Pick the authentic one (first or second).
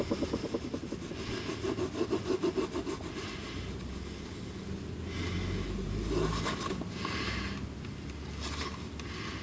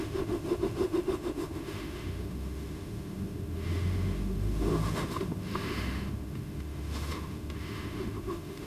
first